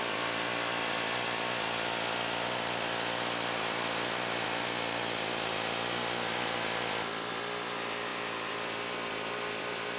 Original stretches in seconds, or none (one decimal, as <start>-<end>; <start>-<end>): 0.0-10.0